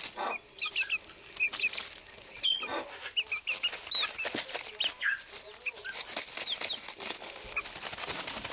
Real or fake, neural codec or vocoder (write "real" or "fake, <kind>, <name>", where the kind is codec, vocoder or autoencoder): real